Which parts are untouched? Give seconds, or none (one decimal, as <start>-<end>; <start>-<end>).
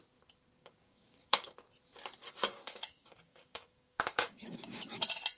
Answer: 0.0-0.6; 1.5-2.2; 5.0-5.4